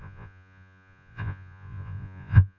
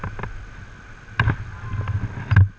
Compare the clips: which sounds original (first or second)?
second